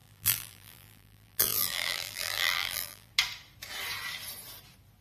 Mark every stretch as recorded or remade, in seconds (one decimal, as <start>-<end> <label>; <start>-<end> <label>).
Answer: 0.0-3.1 remade; 3.1-5.0 recorded